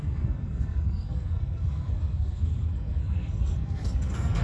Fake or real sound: fake